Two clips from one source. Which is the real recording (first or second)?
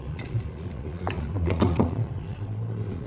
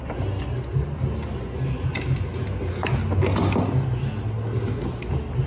second